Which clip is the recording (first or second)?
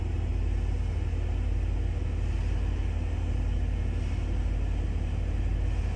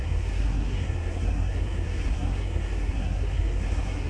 first